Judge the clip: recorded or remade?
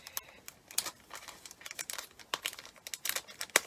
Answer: recorded